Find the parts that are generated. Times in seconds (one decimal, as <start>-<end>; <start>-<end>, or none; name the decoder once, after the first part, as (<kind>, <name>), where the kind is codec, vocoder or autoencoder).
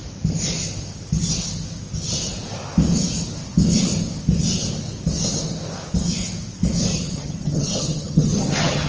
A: 6.9-8.9 (vocoder, HiFi-GAN)